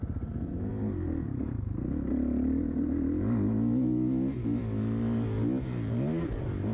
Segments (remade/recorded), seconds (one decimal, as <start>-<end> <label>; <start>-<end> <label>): 0.0-6.7 recorded